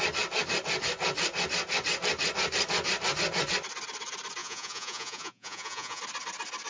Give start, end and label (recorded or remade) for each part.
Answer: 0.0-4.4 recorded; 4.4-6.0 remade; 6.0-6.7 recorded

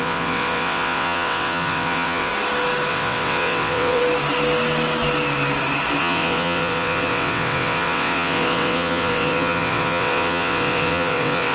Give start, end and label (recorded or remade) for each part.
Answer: 0.0-2.3 remade; 2.3-2.9 recorded; 2.9-4.0 remade; 4.0-6.0 recorded; 6.0-11.5 remade

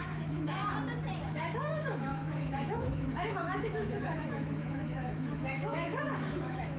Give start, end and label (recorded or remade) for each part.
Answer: 0.0-0.6 remade; 0.6-1.2 recorded; 1.2-6.8 remade

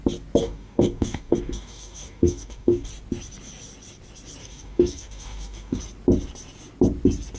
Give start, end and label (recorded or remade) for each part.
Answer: 0.0-0.4 recorded; 0.4-2.9 remade; 2.9-4.4 recorded; 4.4-5.8 remade; 5.8-7.4 recorded

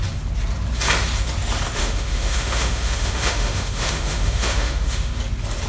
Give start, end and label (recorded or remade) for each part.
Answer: 0.0-1.8 recorded; 1.8-5.2 remade; 5.2-5.7 recorded

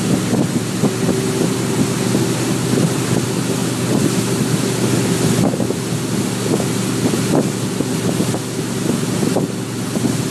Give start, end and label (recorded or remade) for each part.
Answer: 0.0-10.3 recorded

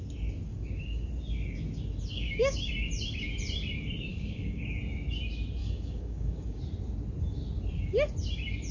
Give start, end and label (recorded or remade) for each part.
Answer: 0.0-0.5 recorded; 0.5-1.1 remade; 1.1-2.1 recorded; 2.1-2.7 remade; 2.7-4.1 recorded; 4.1-4.6 remade; 4.6-5.6 recorded; 5.6-6.6 remade; 6.6-8.7 recorded

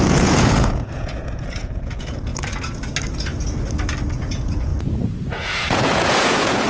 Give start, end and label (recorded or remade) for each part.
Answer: 0.0-2.3 remade; 2.3-4.2 recorded; 4.2-6.7 remade